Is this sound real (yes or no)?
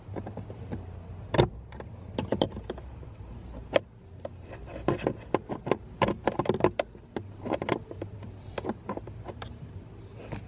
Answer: yes